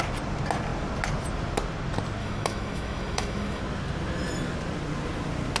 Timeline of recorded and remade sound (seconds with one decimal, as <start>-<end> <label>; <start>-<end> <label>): 0.0-2.2 recorded; 2.2-3.6 remade; 3.6-5.6 recorded